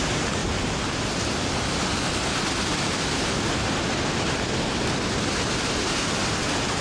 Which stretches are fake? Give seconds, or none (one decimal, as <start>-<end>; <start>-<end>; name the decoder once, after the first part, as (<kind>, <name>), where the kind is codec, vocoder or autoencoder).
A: none